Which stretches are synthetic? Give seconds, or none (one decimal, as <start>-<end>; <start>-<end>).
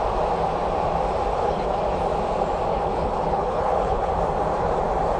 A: 1.3-1.8; 2.7-4.1